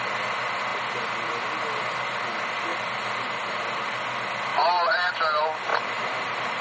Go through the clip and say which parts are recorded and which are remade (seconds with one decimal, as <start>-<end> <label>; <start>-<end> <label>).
0.0-2.7 recorded; 2.7-3.6 remade; 3.6-5.7 recorded; 5.7-6.6 remade